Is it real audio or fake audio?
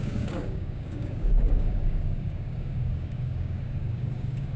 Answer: fake